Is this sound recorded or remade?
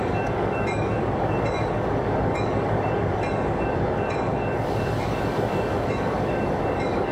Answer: remade